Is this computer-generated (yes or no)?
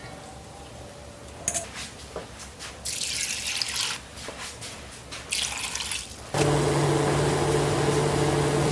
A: no